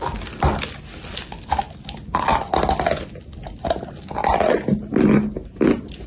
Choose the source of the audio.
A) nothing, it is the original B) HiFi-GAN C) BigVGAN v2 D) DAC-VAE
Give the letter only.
A